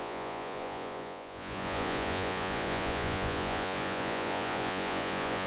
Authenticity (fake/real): fake